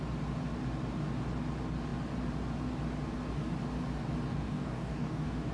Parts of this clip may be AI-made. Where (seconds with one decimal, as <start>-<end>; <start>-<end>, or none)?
4.3-5.5